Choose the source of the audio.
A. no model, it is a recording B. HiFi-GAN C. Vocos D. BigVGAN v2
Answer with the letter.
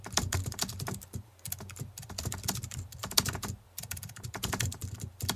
D